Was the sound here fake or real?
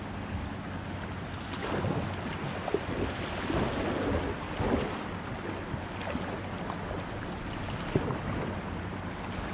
real